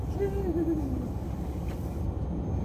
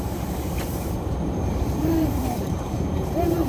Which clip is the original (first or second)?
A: first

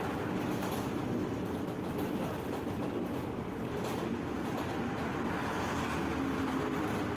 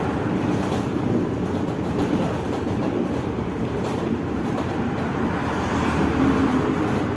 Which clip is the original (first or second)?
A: first